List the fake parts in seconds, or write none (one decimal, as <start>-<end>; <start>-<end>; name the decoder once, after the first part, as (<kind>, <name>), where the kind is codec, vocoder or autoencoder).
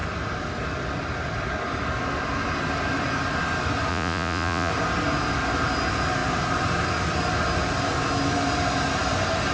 3.9-4.7 (vocoder, Vocos)